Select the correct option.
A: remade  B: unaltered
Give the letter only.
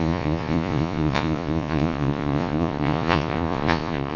A